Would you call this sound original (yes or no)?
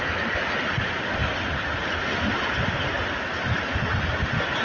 yes